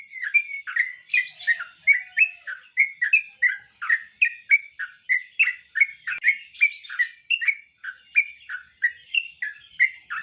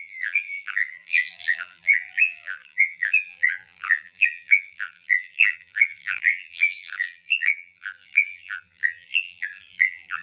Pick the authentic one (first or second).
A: first